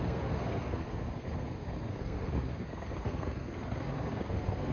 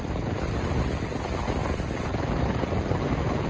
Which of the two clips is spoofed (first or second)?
first